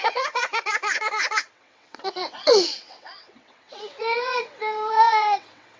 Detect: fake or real fake